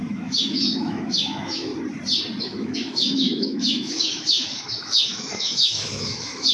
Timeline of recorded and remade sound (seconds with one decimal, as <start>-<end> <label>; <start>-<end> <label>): 0.0-1.7 remade; 1.7-2.4 recorded; 2.4-6.5 remade

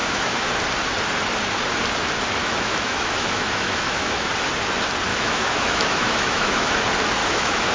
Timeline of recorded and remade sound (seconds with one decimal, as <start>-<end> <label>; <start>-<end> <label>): 0.0-0.5 remade; 0.5-2.4 recorded; 2.4-4.3 remade; 4.3-5.1 recorded; 5.1-6.7 remade; 6.7-7.2 recorded; 7.2-7.7 remade